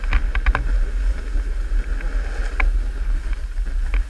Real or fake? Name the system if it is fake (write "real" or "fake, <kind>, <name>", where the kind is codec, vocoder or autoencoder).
real